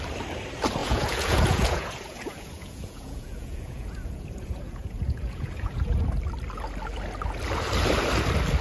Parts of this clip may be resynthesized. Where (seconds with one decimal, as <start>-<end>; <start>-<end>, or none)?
0.8-6.0